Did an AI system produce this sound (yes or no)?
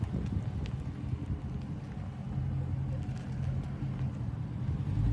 no